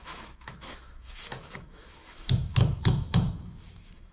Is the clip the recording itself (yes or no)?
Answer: no